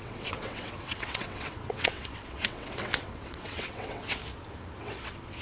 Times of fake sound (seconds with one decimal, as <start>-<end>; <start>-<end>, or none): 0.0-4.2; 4.8-5.4